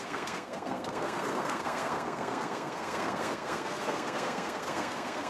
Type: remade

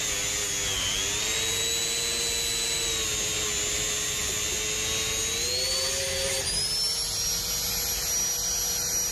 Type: recorded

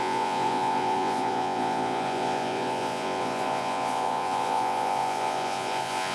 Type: remade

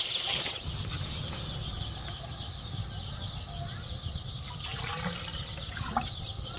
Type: recorded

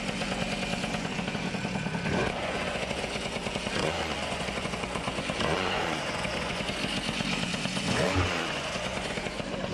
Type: remade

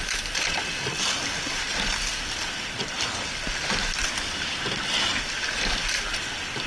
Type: recorded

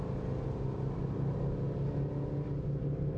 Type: recorded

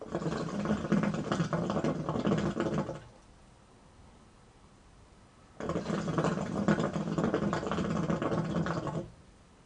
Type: recorded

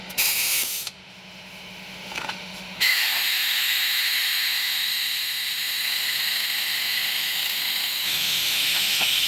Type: remade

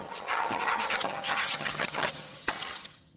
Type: remade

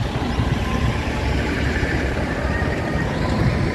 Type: remade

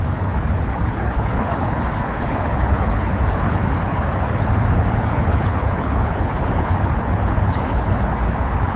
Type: remade